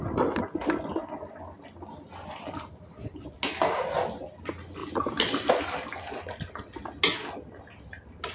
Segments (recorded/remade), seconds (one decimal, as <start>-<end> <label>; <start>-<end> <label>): 0.0-8.3 recorded